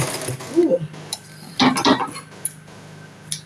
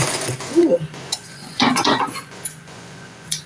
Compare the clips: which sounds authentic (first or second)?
first